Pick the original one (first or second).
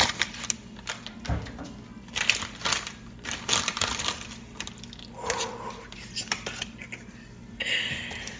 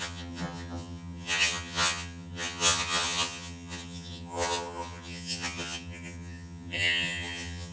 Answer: first